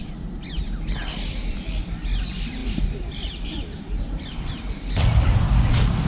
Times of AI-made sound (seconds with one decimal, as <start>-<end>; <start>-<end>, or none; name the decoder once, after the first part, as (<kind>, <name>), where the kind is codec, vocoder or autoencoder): 2.6-5.5 (vocoder, BigVGAN v2)